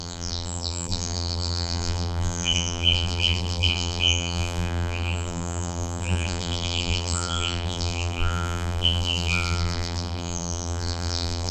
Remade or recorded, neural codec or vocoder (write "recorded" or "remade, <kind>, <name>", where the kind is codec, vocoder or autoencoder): remade, vocoder, BigVGAN v2